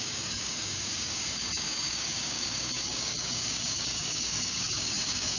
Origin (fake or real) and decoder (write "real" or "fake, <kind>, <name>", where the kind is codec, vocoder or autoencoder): fake, codec, DAC